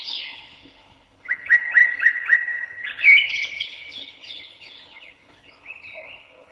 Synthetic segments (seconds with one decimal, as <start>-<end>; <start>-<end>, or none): 0.0-6.5